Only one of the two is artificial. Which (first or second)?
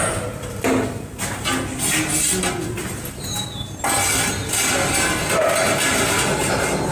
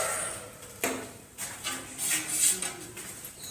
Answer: second